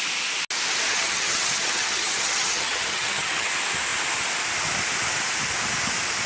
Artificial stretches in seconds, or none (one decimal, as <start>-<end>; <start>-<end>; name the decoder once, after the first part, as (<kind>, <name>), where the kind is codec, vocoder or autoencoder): 0.9-3.5 (vocoder, HiFi-GAN)